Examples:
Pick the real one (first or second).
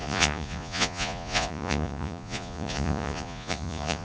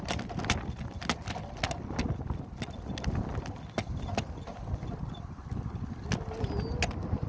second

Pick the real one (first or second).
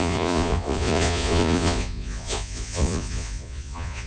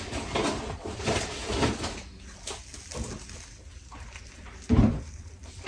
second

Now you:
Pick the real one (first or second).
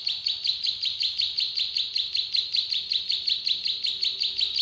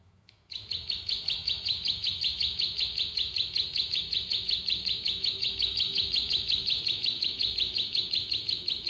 first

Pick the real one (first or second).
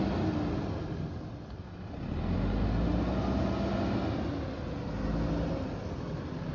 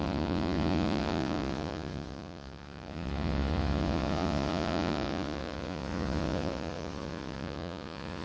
first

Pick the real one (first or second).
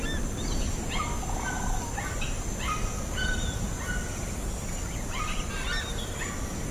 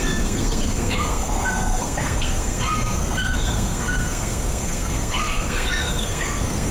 first